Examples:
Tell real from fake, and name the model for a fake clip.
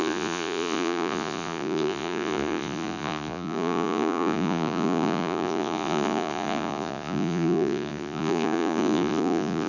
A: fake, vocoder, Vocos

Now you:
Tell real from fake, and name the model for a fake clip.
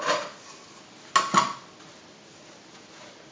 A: real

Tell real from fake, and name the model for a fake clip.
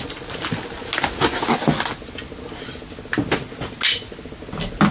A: real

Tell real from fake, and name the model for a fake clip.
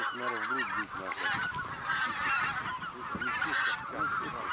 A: real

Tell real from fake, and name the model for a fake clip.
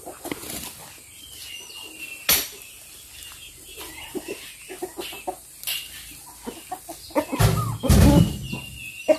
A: real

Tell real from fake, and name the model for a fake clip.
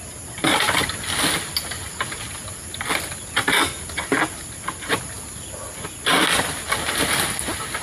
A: real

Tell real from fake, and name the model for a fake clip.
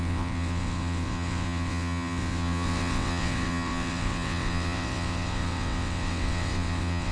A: fake, vocoder, WaveNeXt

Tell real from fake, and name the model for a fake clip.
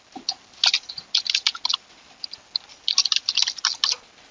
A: real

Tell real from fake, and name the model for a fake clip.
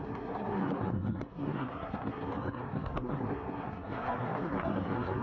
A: fake, codec, SNAC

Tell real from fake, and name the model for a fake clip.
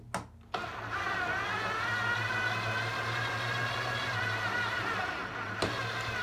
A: real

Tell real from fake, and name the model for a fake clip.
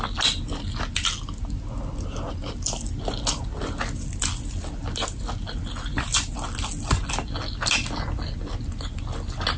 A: real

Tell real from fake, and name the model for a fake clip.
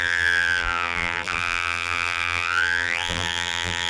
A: fake, vocoder, BigVGAN v2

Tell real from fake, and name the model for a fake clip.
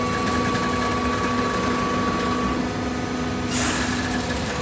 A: real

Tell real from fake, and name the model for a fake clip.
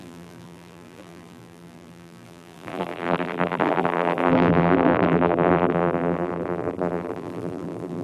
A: fake, vocoder, BigVGAN v2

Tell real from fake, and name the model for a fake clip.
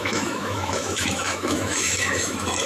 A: fake, autoencoder, DAC-VAE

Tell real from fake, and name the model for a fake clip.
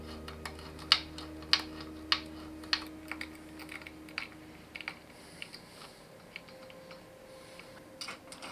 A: real